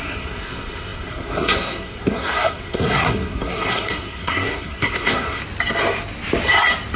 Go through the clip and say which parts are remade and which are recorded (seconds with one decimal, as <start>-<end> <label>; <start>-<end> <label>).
0.0-5.4 remade; 5.4-7.0 recorded